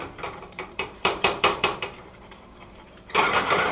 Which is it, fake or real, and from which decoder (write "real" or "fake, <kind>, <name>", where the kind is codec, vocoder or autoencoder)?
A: fake, vocoder, BigVGAN v2